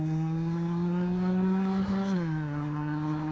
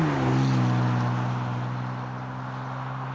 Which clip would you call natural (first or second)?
second